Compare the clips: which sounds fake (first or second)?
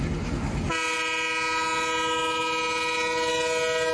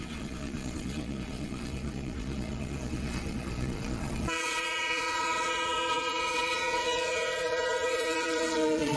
second